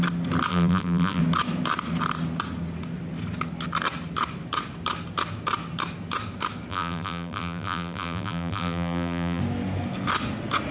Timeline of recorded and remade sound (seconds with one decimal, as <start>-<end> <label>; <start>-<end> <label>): 0.0-0.5 recorded; 0.5-1.2 remade; 1.2-6.7 recorded; 6.7-9.4 remade; 9.4-10.7 recorded